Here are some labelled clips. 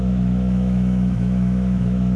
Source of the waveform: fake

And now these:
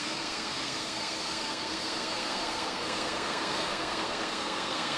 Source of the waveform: fake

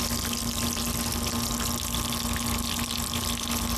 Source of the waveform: real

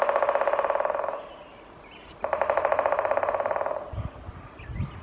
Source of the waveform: real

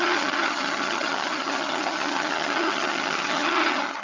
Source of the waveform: fake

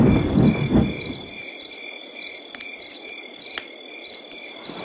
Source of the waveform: real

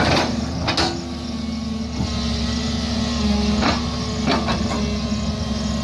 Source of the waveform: real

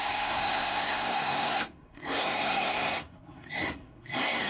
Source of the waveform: fake